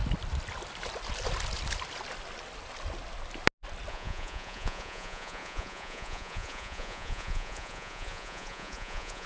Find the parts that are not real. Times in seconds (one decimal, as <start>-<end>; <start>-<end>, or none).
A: 3.9-9.3

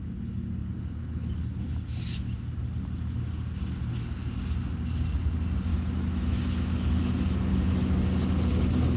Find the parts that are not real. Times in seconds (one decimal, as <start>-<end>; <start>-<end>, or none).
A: 5.7-7.5

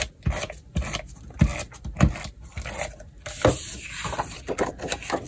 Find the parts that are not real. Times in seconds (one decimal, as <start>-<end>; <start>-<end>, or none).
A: none

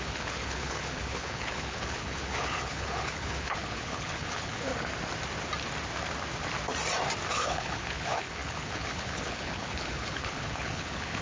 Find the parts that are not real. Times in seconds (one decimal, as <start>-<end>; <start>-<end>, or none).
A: 0.0-4.7; 7.3-11.2

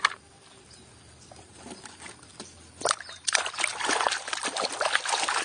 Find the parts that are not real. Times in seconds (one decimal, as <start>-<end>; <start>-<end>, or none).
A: none

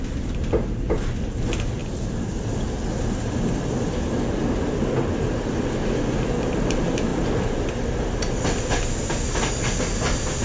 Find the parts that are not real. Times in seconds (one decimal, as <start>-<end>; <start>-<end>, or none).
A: none

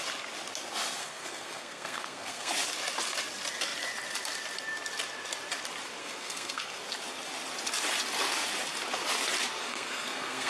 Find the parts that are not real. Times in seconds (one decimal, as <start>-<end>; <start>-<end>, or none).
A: 1.0-2.5; 6.0-6.8; 9.6-10.5

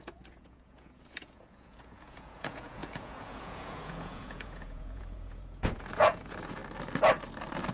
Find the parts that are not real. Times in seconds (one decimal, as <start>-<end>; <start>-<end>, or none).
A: 0.0-6.6